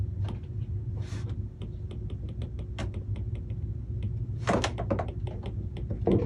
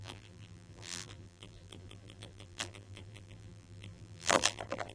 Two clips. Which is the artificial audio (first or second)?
second